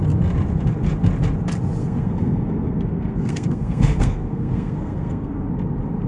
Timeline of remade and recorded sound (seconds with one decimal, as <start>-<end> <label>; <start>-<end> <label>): 0.0-1.8 recorded; 1.8-5.5 remade; 5.5-6.1 recorded